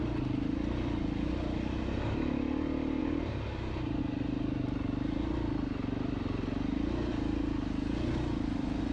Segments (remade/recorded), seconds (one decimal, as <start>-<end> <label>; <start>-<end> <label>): 0.0-3.0 recorded; 3.0-4.0 remade; 4.0-8.9 recorded